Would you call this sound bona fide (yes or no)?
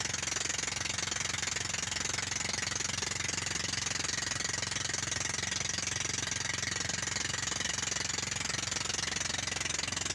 yes